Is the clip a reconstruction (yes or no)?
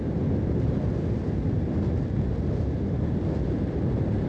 no